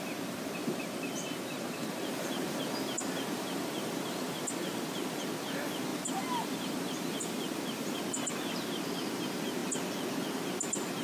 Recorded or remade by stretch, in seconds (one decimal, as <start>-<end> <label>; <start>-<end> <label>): 0.0-0.6 recorded; 0.6-5.2 remade; 5.2-5.9 recorded; 5.9-8.3 remade; 8.3-11.0 recorded